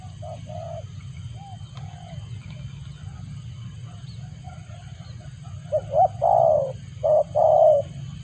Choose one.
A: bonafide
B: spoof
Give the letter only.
A